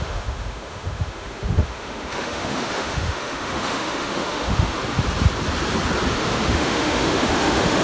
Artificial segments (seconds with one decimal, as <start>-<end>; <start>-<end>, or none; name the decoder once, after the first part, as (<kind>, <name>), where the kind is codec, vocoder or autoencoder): 0.0-4.8 (autoencoder, DAC-VAE); 6.1-7.8